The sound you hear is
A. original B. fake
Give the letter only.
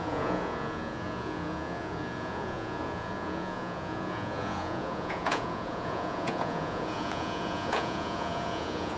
B